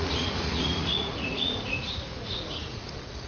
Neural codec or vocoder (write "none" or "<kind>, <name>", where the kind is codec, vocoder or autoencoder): vocoder, Vocos